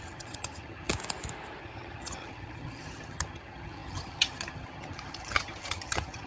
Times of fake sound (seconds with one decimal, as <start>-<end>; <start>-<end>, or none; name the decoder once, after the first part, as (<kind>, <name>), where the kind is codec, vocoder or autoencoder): 0.0-0.9 (vocoder, HiFi-GAN); 1.6-6.3